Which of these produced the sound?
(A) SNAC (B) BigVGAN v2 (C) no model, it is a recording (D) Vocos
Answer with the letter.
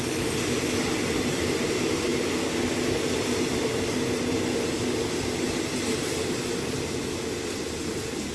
C